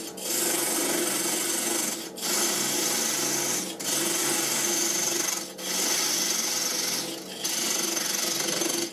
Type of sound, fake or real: real